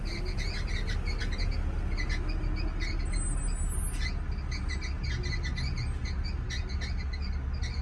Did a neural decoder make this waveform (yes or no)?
no